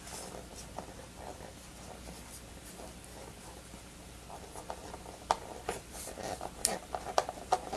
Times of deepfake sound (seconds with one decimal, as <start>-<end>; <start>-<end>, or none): 0.0-0.5; 1.9-7.8